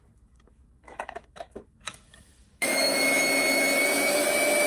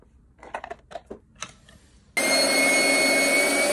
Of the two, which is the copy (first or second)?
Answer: first